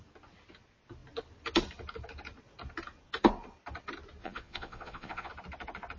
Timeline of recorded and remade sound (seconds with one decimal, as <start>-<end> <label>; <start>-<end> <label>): 0.0-4.2 recorded; 4.2-5.3 remade; 5.3-6.0 recorded